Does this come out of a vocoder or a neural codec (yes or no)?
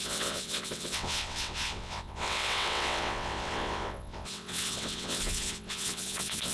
yes